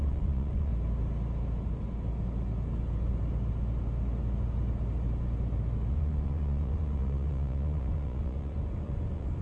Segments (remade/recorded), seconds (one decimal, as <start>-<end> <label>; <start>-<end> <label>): 0.0-0.7 remade; 0.7-5.9 recorded; 5.9-9.4 remade